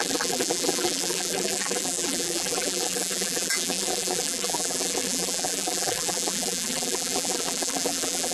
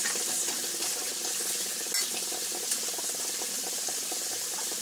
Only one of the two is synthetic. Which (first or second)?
first